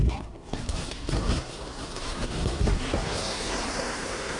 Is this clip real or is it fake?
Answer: fake